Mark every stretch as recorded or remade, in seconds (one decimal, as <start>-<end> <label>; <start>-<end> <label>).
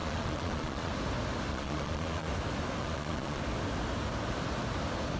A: 0.0-0.9 remade; 0.9-1.5 recorded; 1.5-2.3 remade; 2.3-2.8 recorded; 2.8-3.4 remade; 3.4-5.2 recorded